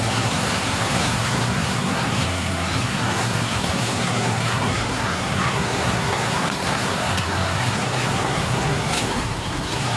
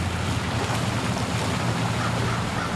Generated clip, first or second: first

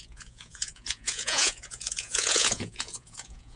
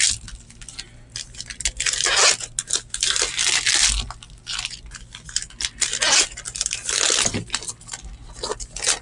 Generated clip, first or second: first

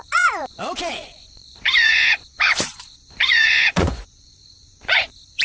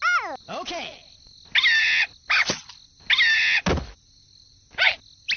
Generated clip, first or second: first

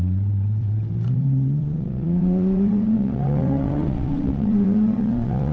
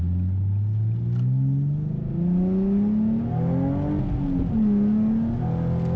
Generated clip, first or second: first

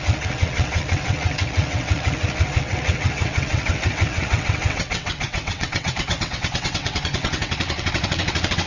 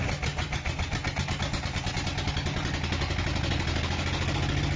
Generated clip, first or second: first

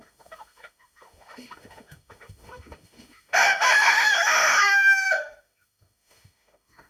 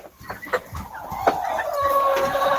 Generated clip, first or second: first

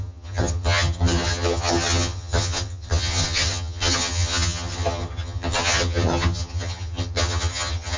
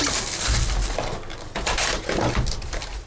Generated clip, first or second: first